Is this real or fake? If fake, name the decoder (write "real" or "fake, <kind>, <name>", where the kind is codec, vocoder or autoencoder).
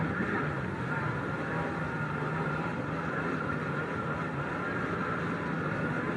real